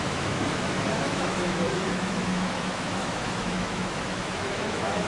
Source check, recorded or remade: remade